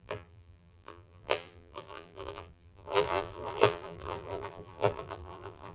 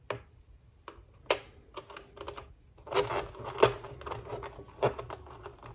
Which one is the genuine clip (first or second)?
second